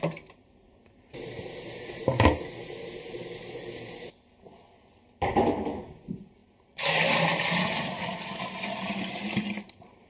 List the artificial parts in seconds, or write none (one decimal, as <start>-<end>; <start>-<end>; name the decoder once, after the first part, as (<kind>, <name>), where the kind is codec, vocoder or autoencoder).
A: 0.0-2.0 (vocoder, BigVGAN v2); 5.3-6.4; 8.4-10.1